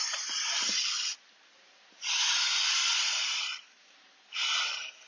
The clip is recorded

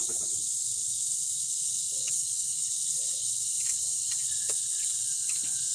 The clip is remade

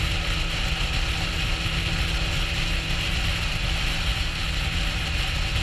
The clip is recorded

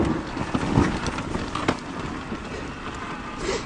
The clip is recorded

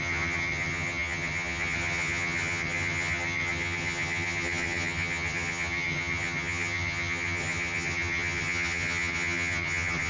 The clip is remade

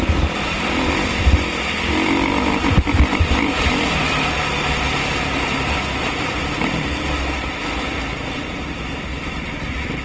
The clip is recorded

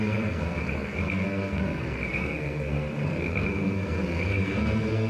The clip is remade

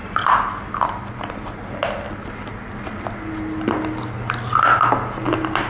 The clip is recorded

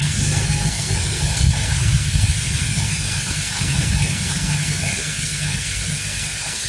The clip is remade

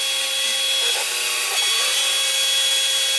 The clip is recorded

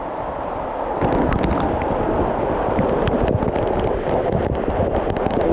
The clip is recorded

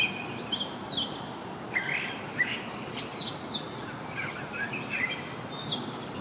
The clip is recorded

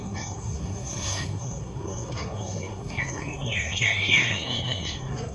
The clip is remade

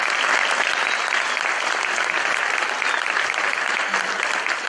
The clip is recorded